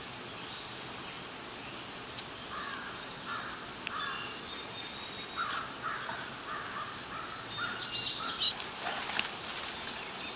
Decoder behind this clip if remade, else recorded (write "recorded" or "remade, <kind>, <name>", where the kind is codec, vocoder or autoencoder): recorded